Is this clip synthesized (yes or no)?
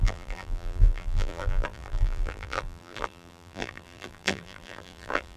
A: yes